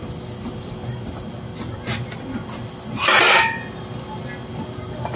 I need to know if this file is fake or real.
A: real